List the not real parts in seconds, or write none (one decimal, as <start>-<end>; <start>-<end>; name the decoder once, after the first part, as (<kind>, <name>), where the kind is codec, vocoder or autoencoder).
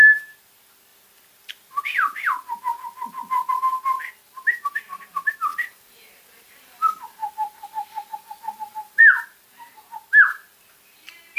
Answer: none